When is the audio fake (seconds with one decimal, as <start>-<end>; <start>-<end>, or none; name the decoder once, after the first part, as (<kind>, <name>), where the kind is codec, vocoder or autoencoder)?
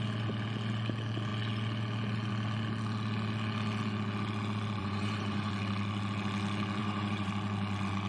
4.8-5.5 (vocoder, Vocos); 6.8-7.3